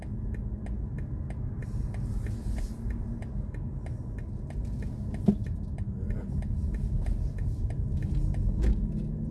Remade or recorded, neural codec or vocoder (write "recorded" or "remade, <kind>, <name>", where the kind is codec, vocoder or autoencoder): recorded